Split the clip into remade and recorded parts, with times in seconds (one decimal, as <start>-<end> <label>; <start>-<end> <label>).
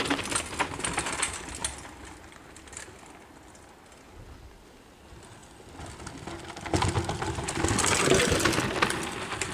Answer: 0.0-9.5 recorded